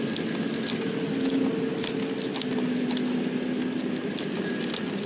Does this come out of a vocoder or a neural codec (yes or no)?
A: no